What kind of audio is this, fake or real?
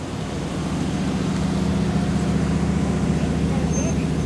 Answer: real